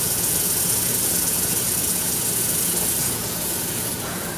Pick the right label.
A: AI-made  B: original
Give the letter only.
A